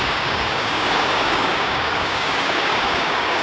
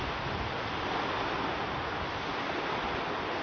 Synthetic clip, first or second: first